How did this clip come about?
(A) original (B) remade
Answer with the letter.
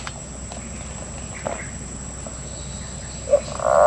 A